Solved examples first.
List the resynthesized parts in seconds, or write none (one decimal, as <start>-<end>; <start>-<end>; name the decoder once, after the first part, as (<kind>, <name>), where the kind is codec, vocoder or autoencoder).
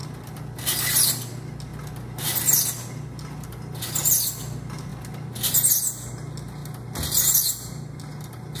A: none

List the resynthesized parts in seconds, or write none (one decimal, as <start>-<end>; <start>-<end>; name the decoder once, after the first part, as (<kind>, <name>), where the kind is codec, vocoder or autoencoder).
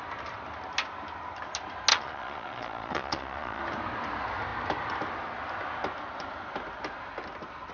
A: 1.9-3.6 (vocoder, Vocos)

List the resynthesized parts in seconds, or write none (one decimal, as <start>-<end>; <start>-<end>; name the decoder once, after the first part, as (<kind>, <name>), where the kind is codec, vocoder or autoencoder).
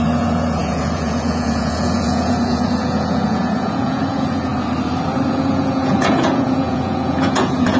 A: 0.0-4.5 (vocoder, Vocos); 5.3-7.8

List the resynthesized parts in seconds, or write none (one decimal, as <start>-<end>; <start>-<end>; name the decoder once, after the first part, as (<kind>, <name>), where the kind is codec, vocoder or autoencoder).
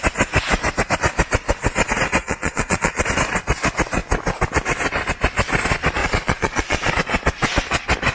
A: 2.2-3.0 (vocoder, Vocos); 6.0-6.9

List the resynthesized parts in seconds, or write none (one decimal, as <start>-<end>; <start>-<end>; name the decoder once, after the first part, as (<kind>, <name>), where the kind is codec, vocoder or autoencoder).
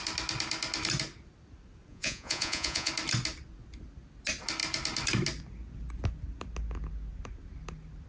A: 1.9-2.9 (vocoder, Vocos)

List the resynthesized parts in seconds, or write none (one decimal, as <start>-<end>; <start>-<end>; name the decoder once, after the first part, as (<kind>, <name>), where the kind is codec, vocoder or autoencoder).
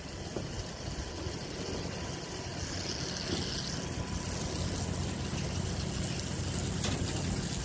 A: none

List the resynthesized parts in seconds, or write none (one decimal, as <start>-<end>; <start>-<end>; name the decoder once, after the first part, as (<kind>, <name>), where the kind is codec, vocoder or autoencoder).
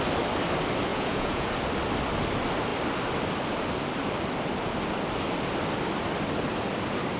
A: 0.9-1.5 (vocoder, Vocos)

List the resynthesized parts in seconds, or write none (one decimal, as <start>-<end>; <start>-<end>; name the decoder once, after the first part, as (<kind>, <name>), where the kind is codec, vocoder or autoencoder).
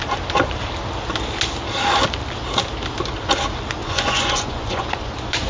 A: 3.8-5.5 (vocoder, Vocos)